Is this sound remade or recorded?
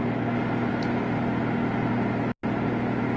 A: recorded